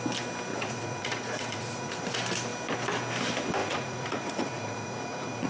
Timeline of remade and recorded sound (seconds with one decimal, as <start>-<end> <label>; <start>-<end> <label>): 0.0-0.5 recorded; 0.5-2.1 remade; 2.1-3.6 recorded; 3.6-5.5 remade